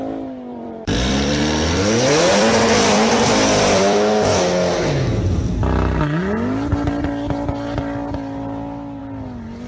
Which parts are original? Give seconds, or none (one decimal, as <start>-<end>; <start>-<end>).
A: 0.0-0.5; 4.3-9.7

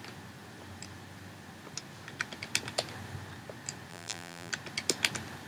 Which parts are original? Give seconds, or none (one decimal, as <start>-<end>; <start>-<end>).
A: 0.0-3.9; 4.5-5.5